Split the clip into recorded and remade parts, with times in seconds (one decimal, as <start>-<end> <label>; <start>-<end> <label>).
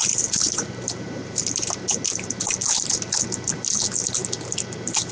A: 0.0-3.1 remade; 3.1-5.1 recorded